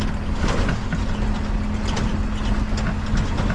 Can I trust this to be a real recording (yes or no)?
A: yes